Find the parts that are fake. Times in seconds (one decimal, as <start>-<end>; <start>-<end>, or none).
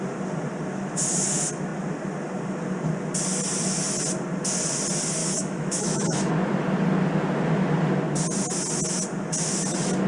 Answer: 5.2-6.3